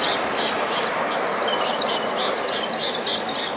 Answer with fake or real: real